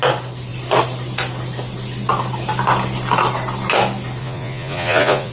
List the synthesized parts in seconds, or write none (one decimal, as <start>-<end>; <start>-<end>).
4.2-5.3